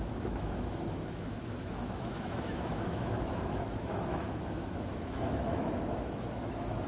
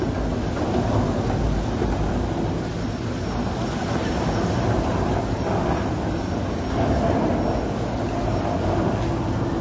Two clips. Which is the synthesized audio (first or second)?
first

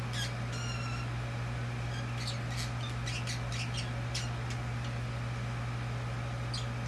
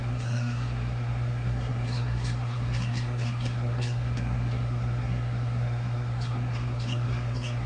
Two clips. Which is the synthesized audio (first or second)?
second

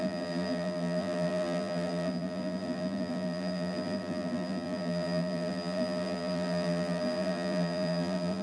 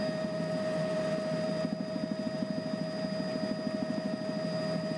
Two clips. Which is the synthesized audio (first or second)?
first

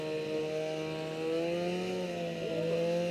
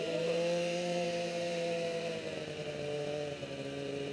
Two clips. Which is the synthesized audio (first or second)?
second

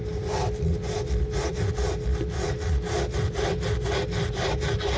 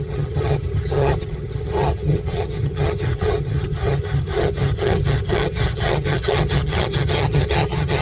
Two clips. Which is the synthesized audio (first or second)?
second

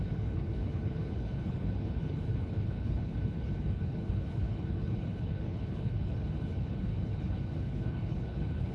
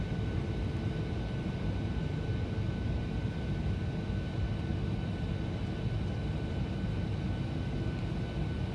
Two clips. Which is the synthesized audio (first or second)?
first